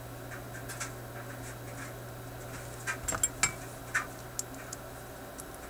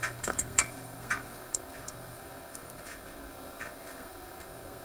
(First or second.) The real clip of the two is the first